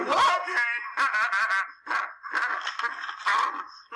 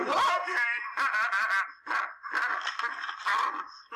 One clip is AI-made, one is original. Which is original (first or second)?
first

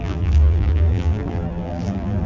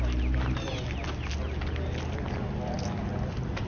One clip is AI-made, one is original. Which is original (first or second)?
second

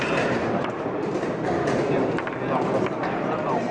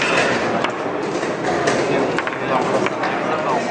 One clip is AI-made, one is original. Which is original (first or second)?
second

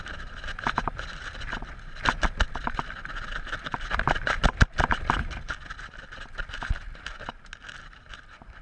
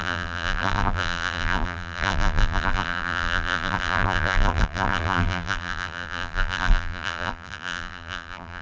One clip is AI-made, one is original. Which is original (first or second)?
first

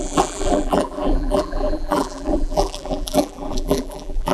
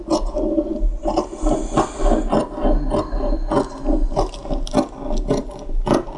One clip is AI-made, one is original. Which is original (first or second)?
second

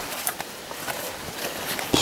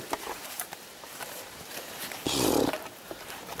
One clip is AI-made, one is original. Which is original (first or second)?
first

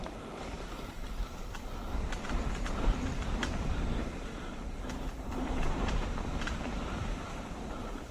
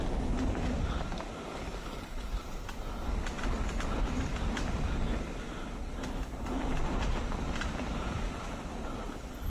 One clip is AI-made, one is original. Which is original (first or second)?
second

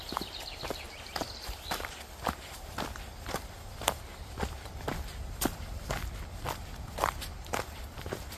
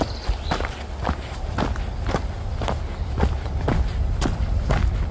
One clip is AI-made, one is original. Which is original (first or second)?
second